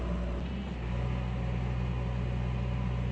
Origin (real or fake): real